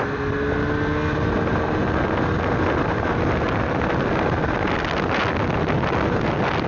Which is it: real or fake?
real